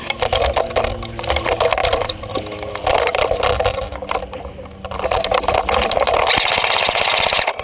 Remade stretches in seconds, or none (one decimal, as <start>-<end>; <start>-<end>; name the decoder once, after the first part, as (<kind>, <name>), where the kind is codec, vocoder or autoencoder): none